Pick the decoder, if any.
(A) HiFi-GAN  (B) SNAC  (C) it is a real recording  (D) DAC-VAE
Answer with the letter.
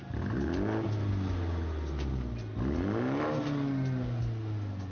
C